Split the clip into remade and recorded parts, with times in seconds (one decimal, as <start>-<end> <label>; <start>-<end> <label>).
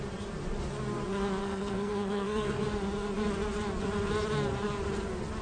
0.0-1.4 recorded; 1.4-2.6 remade; 2.6-5.4 recorded